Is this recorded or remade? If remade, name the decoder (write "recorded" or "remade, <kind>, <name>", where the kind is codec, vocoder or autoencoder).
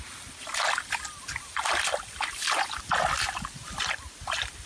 recorded